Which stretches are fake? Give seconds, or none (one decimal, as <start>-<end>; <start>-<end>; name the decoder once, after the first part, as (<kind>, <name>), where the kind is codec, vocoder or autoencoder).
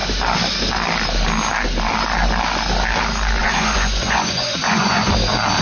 3.4-5.1 (vocoder, Vocos)